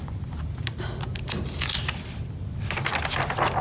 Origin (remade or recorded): recorded